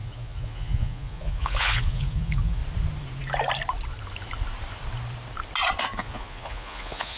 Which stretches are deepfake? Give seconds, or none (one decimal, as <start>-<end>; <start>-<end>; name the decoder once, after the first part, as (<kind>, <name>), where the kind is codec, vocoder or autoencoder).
0.0-2.6 (vocoder, Vocos); 5.8-7.2